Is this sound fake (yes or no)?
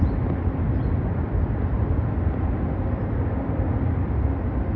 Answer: no